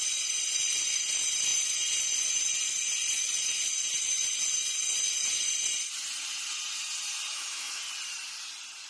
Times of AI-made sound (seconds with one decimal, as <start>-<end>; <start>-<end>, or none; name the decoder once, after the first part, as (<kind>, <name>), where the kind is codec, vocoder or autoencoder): 7.3-7.8 (autoencoder, DAC-VAE)